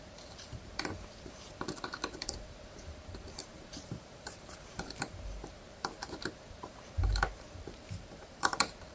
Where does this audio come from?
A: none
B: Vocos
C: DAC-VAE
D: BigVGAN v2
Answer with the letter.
D